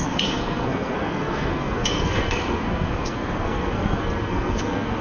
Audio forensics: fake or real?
fake